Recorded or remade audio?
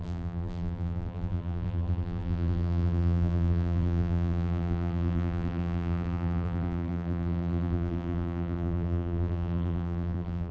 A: remade